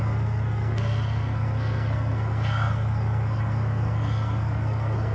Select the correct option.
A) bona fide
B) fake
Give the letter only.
B